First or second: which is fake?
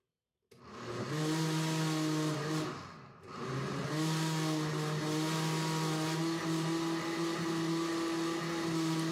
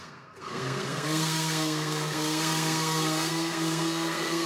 second